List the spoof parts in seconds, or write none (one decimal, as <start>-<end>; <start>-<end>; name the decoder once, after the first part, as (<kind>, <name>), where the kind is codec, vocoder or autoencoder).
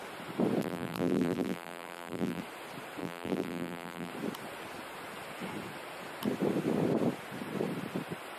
0.6-2.4 (vocoder, BigVGAN v2); 3.0-4.1